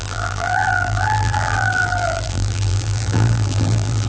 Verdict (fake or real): fake